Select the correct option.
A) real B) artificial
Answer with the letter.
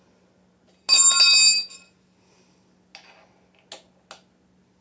A